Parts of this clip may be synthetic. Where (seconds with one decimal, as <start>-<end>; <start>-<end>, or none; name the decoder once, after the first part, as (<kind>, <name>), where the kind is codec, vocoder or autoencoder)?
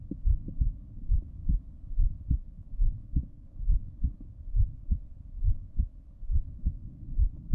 0.0-1.4 (codec, DAC); 2.3-5.1; 6.2-7.5